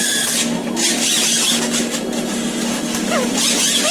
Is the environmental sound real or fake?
real